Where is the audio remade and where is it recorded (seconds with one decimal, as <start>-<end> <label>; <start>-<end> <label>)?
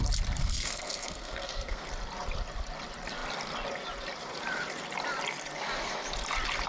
0.0-0.4 recorded; 0.4-1.9 remade; 1.9-6.7 recorded